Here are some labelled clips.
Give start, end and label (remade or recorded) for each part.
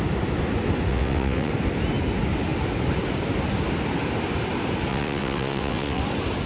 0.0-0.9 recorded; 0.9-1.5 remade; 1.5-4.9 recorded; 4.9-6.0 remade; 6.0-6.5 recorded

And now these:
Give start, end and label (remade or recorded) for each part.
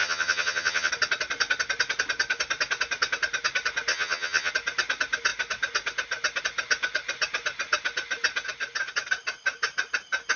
0.0-0.9 remade; 0.9-3.9 recorded; 3.9-4.5 remade; 4.5-10.4 recorded